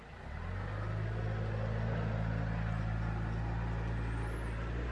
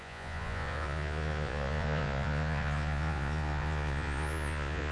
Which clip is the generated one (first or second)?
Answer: second